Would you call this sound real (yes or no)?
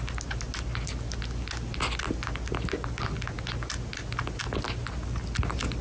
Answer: yes